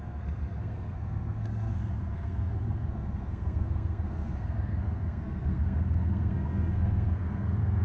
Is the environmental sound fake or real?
fake